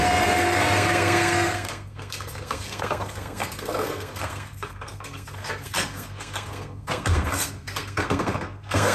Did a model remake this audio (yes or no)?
yes